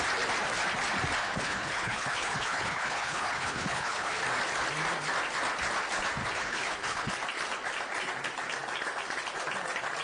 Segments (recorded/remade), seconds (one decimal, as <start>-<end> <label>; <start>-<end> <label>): 0.0-1.2 recorded; 1.2-4.2 remade; 4.2-6.2 recorded; 6.2-7.1 remade; 7.1-10.0 recorded